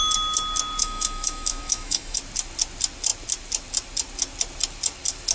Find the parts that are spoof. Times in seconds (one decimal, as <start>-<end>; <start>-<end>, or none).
0.8-2.2